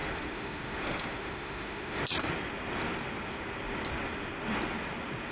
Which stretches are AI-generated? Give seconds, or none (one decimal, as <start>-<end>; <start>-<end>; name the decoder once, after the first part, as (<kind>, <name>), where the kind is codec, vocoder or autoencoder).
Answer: 0.0-2.0 (autoencoder, DAC-VAE)